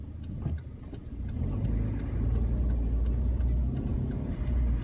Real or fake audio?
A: real